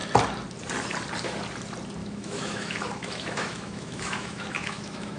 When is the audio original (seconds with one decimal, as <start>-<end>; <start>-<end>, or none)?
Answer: 0.0-2.0